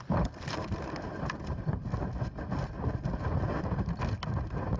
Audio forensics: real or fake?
real